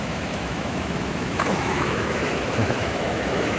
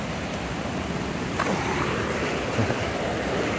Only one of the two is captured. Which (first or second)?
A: second